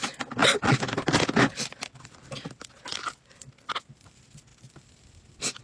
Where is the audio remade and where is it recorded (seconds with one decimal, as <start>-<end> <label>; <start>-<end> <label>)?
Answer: 0.0-0.4 recorded; 0.4-2.6 remade; 2.6-5.6 recorded

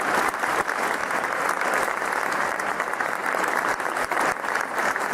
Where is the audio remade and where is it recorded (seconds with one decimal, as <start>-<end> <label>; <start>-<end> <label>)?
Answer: 0.0-5.1 remade

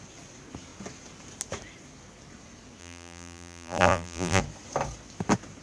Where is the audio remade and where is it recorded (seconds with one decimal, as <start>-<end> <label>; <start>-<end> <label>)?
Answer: 0.0-2.8 recorded; 2.8-4.4 remade; 4.4-5.6 recorded

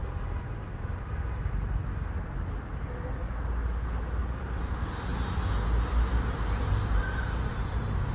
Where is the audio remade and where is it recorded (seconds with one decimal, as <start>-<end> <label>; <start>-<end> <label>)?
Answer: 0.0-1.8 remade; 1.8-4.4 recorded; 4.4-5.1 remade; 5.1-6.3 recorded; 6.3-8.1 remade

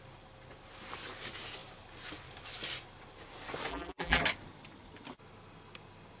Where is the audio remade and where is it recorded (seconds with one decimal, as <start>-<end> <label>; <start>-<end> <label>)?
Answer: 0.0-3.7 recorded; 3.7-4.2 remade; 4.2-6.2 recorded

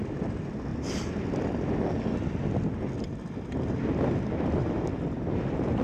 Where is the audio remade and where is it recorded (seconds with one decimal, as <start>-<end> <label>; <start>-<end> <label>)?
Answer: 0.0-5.8 recorded

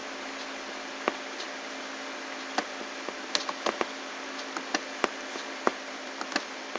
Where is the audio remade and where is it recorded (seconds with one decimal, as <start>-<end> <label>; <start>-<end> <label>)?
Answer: 0.0-5.7 recorded; 5.7-6.8 remade

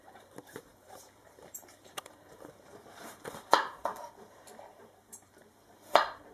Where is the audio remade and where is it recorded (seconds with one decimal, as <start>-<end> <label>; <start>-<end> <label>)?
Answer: 0.0-6.3 remade